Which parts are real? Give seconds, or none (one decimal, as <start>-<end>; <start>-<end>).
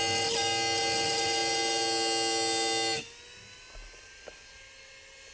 0.0-5.3